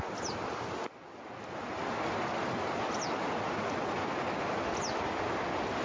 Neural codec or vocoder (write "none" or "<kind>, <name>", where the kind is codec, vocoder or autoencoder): none